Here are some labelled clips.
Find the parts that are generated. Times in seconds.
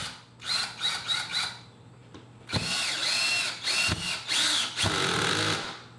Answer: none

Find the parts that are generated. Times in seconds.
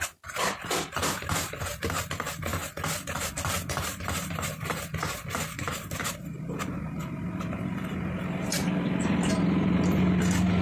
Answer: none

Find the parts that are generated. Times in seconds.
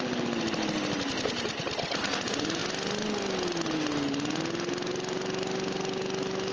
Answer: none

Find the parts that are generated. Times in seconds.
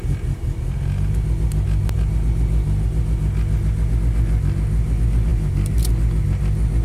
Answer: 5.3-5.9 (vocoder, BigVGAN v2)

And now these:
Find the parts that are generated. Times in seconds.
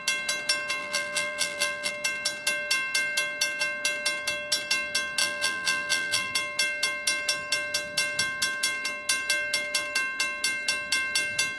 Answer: 0.8-1.9 (vocoder, BigVGAN v2); 5.2-6.3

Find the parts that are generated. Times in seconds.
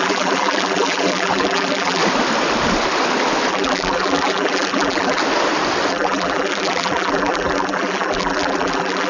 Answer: 0.0-2.0 (vocoder, BigVGAN v2); 3.5-5.2; 5.9-9.1